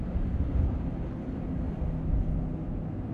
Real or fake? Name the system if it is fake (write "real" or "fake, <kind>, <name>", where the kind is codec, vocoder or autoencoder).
real